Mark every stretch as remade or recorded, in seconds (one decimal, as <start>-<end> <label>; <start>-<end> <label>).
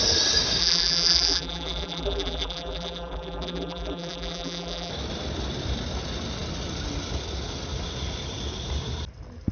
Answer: 0.0-0.6 recorded; 0.6-4.9 remade; 4.9-9.5 recorded